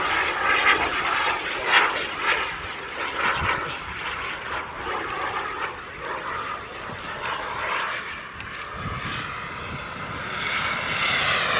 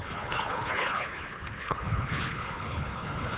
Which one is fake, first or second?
second